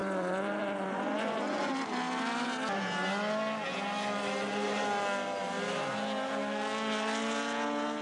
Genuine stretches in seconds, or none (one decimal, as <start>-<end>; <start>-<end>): 1.7-8.0